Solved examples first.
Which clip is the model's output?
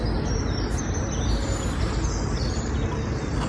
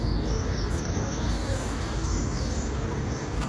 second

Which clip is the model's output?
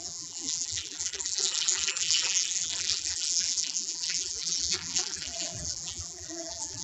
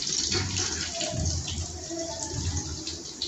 first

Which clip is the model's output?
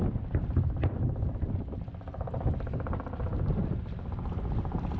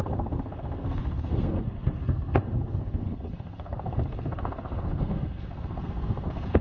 second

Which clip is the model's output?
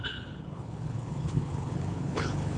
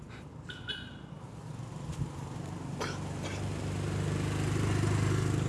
first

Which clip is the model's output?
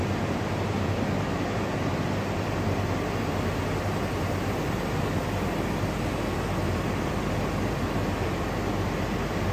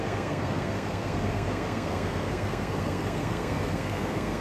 second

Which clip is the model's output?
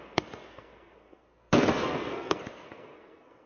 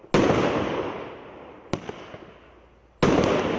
first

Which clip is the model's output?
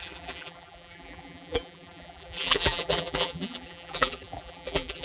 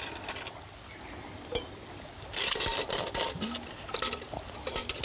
first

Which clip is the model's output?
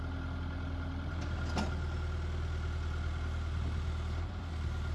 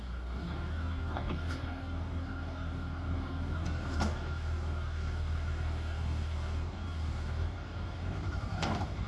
second